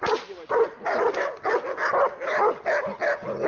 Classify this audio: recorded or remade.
recorded